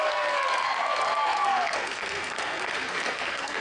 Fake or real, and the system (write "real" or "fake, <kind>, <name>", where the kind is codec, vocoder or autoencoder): fake, codec, SNAC